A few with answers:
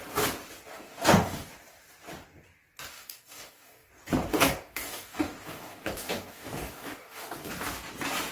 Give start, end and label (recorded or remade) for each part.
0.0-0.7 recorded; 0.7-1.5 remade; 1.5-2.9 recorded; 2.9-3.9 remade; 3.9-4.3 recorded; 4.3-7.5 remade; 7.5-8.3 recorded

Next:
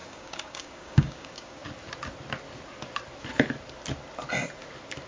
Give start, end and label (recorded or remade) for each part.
0.0-1.6 remade; 1.6-5.1 recorded

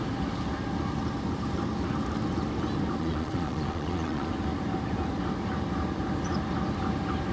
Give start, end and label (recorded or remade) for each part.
0.0-3.0 recorded; 3.0-4.3 remade; 4.3-7.3 recorded

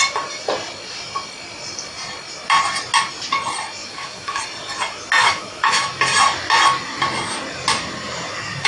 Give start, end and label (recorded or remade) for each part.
0.0-3.8 recorded; 3.8-4.4 remade; 4.4-5.2 recorded; 5.2-5.9 remade; 5.9-8.7 recorded

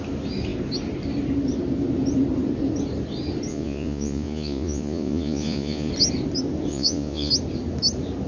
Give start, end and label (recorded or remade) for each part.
0.0-3.5 recorded; 3.5-5.9 remade; 5.9-6.7 recorded; 6.7-7.3 remade; 7.3-8.3 recorded